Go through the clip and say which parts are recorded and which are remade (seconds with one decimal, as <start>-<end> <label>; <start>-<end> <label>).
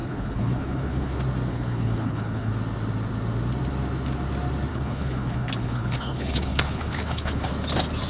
0.0-1.1 remade; 1.1-1.5 recorded; 1.5-2.5 remade; 2.5-4.7 recorded; 4.7-7.5 remade; 7.5-8.1 recorded